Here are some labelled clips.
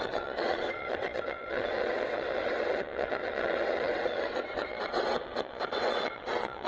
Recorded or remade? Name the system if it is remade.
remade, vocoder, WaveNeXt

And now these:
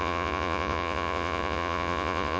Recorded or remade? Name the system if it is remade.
remade, vocoder, Vocos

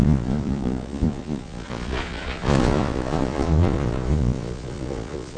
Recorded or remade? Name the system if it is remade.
remade, vocoder, Vocos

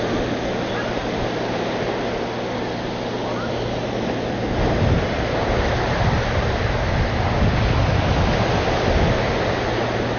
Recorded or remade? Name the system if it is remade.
recorded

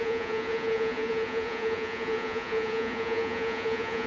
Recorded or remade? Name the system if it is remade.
remade, vocoder, Vocos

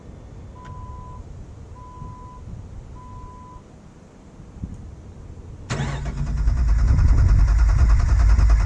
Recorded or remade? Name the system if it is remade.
recorded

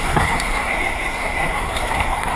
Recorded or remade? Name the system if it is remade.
remade, codec, SNAC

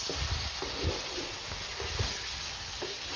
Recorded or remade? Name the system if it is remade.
recorded